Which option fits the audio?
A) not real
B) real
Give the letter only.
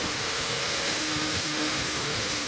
A